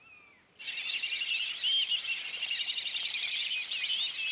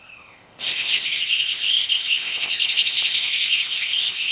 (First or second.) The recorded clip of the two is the first